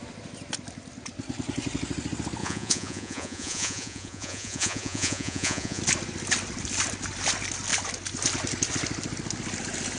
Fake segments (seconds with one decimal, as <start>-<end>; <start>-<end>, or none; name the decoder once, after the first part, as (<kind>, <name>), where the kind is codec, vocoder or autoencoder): 2.4-5.8 (vocoder, Vocos)